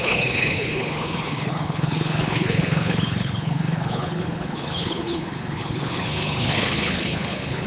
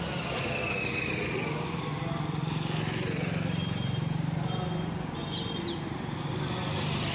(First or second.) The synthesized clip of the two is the first